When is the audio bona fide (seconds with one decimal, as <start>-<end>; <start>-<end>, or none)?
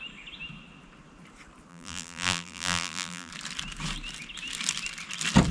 0.0-1.7; 3.3-5.5